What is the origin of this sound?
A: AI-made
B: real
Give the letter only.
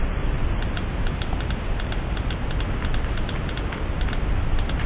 B